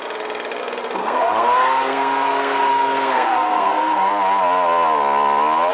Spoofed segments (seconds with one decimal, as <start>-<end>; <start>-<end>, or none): 1.0-4.1